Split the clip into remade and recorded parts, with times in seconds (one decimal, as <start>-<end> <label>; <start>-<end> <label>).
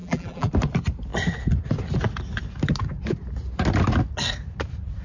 0.0-0.5 remade; 0.5-5.0 recorded